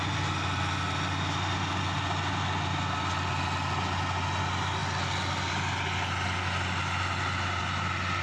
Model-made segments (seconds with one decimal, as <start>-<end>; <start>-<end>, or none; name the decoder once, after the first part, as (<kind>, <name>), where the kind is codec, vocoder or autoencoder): none